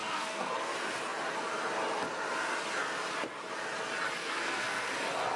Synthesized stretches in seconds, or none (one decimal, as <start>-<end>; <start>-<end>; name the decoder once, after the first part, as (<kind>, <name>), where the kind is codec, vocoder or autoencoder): 0.0-0.5 (codec, SNAC); 4.2-4.9